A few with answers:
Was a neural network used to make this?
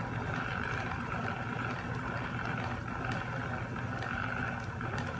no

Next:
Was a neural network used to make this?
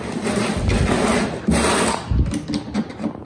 no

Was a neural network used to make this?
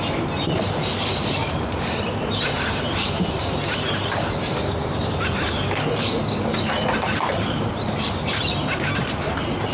yes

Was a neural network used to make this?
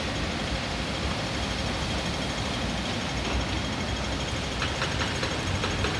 yes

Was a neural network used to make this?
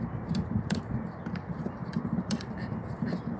yes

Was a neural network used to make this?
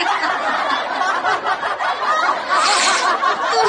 no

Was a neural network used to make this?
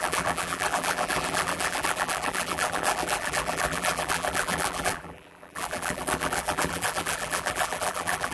yes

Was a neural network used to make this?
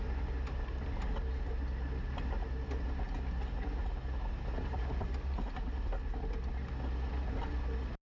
no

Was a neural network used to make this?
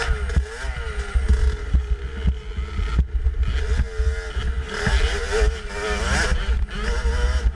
no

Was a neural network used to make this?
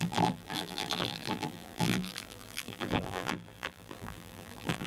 yes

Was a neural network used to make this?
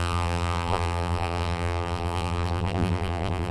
yes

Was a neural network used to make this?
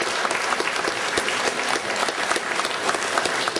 yes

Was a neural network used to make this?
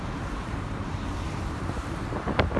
yes